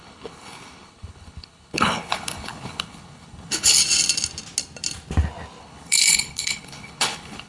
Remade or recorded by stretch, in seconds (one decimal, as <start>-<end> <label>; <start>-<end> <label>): 0.0-3.8 remade; 3.8-5.6 recorded; 5.6-7.5 remade